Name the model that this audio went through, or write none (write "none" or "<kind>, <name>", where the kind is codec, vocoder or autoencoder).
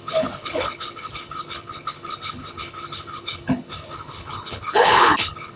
codec, HILCodec